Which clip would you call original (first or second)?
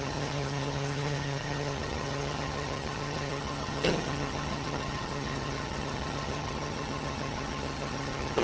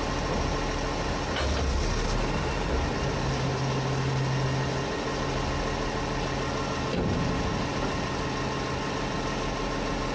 second